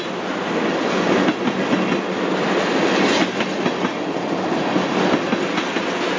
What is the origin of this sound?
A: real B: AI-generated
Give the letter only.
A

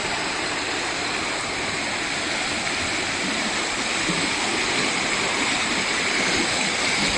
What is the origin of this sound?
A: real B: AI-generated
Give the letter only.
A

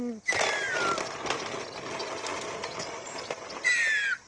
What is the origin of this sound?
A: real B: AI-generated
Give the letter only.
A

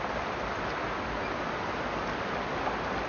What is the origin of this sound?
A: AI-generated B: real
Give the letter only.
B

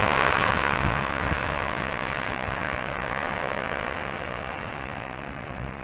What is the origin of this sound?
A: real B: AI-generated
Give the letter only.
B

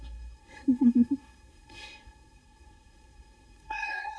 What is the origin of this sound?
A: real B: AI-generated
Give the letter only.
B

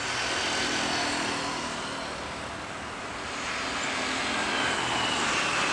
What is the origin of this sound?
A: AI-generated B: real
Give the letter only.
B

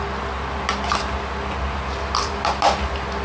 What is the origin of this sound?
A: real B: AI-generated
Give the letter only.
A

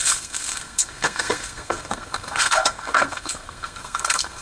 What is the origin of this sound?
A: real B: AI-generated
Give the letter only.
B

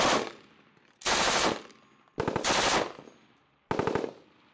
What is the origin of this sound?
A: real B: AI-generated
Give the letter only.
A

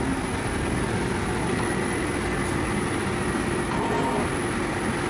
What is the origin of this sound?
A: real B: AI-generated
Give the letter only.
A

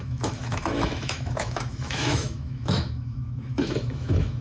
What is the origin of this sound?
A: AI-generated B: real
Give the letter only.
A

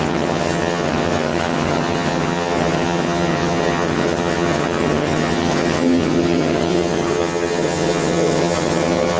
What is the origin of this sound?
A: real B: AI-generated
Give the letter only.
B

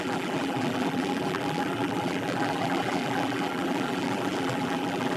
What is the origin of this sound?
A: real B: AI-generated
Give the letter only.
B